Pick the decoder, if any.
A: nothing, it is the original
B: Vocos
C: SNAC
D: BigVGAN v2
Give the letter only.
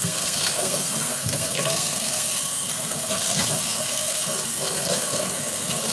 C